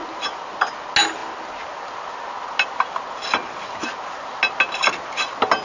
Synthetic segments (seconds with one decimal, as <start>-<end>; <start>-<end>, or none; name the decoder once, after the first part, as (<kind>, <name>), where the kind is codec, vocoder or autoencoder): none

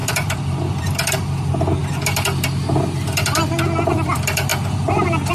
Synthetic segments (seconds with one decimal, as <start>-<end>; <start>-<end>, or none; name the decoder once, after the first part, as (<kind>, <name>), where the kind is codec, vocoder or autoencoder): 0.0-1.8 (vocoder, BigVGAN v2); 3.9-4.5